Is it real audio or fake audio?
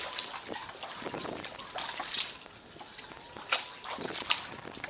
real